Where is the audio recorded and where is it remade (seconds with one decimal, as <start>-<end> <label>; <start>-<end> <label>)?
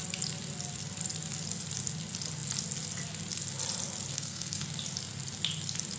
0.0-4.1 recorded; 4.1-4.6 remade; 4.6-6.0 recorded